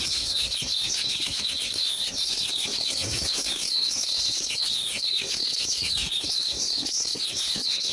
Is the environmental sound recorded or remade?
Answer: remade